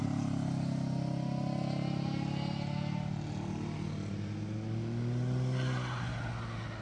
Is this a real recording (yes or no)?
yes